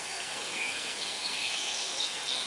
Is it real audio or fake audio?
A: fake